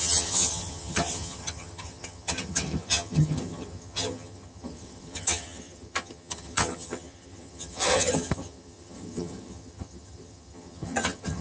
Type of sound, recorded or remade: remade